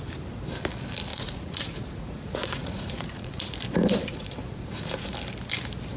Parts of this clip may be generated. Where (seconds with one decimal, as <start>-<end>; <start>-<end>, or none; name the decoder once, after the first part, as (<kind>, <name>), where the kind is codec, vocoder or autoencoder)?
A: 1.1-3.5 (vocoder, Vocos); 4.1-5.1